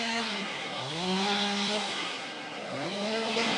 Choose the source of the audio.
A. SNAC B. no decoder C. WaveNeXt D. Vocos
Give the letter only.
A